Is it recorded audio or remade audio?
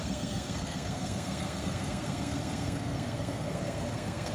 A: remade